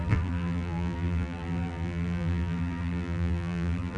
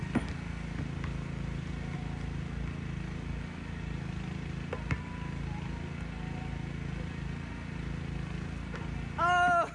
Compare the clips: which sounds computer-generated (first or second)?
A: first